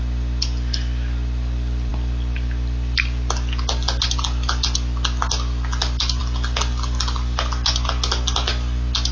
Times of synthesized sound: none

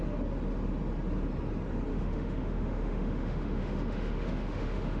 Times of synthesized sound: 1.9-5.0 (autoencoder, DAC-VAE)

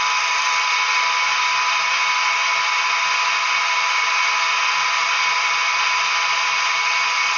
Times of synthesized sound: none